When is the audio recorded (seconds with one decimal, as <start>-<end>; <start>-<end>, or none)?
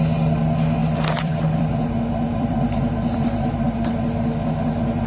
0.0-0.8; 3.9-5.1